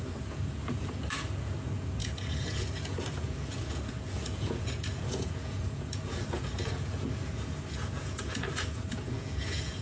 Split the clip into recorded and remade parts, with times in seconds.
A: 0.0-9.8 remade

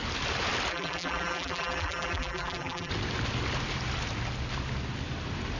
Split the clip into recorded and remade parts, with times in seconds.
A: 0.0-0.7 recorded; 0.7-2.9 remade; 2.9-5.6 recorded